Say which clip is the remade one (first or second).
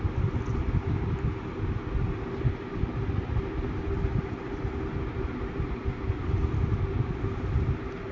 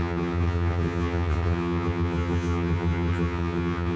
second